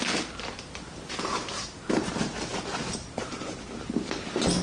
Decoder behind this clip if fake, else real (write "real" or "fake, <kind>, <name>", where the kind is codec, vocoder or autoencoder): real